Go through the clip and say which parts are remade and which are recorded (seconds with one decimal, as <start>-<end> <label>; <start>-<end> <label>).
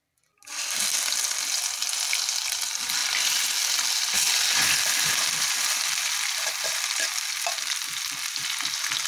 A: 0.0-9.1 recorded